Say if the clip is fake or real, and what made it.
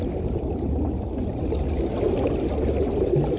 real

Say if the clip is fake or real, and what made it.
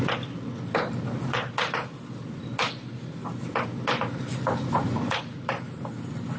real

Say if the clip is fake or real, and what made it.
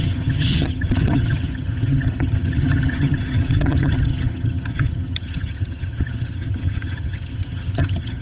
fake, vocoder, HiFi-GAN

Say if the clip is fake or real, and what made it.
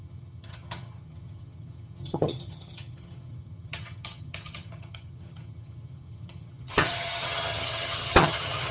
fake, vocoder, HiFi-GAN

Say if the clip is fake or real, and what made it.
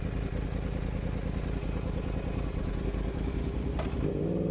real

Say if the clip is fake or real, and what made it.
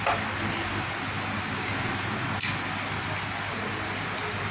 real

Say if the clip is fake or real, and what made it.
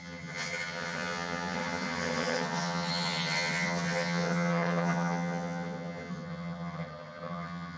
fake, vocoder, HiFi-GAN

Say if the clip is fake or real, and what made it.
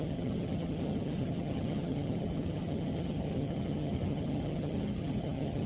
fake, vocoder, HiFi-GAN